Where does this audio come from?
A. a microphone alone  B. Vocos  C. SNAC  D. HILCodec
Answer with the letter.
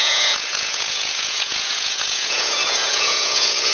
B